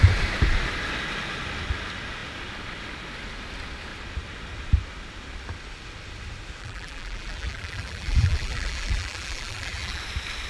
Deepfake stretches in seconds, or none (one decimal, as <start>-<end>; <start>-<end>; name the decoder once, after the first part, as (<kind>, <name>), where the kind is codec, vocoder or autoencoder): 6.6-10.0 (vocoder, BigVGAN v2)